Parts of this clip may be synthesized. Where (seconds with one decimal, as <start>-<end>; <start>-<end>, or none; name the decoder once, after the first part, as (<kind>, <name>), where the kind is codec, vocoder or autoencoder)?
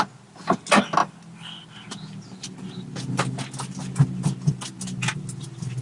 none